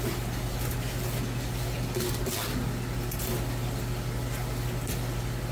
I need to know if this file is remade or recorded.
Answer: recorded